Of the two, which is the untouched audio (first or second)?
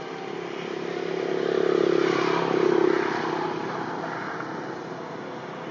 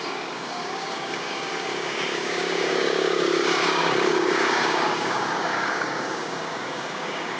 first